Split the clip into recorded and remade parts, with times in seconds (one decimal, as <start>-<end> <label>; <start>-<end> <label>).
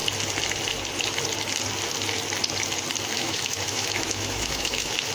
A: 0.0-3.1 recorded; 3.1-5.1 remade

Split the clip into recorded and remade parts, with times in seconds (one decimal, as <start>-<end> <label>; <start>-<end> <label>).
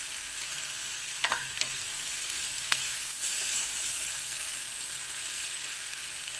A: 0.0-6.4 remade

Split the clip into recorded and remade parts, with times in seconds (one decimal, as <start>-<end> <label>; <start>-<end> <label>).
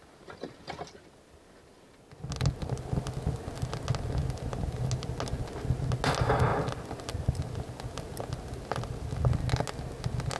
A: 0.0-10.4 recorded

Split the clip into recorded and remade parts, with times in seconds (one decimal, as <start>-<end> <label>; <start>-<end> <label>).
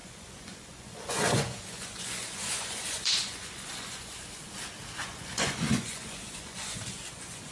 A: 0.0-4.5 remade; 4.5-5.0 recorded; 5.0-7.5 remade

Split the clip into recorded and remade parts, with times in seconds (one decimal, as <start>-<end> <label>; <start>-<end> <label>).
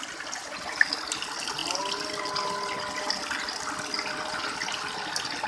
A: 0.0-5.5 recorded